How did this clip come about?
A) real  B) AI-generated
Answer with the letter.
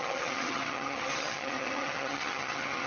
B